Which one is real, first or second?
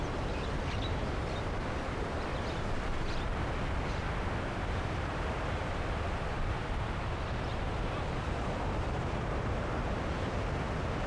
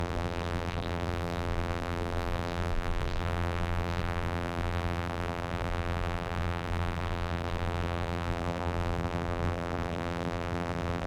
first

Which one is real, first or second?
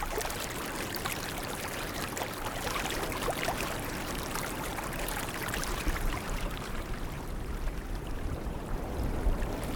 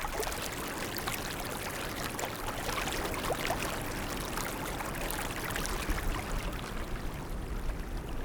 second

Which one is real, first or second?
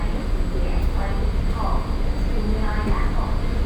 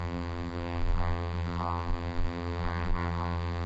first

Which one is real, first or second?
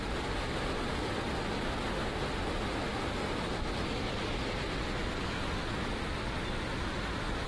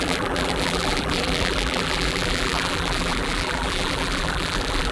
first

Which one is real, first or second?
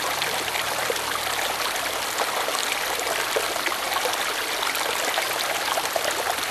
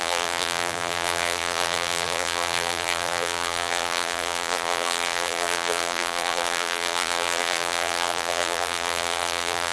first